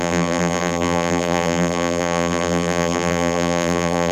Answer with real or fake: fake